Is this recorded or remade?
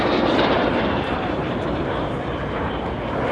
remade